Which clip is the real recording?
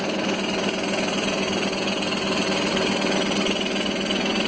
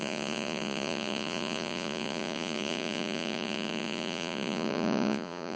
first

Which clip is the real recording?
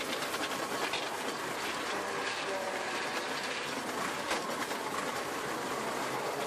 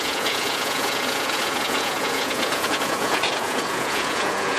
first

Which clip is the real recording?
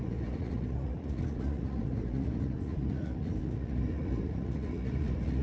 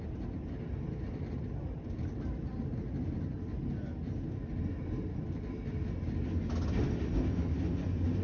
second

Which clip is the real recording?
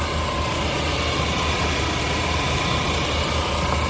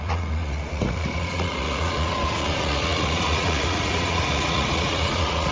first